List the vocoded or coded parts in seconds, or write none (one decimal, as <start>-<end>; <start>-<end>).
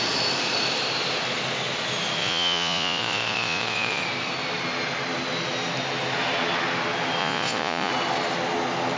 2.2-4.0; 7.2-7.9